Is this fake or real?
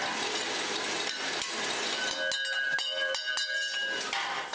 real